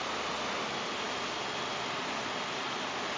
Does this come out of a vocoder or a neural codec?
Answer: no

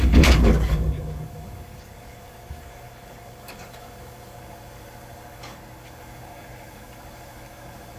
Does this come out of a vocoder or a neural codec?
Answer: yes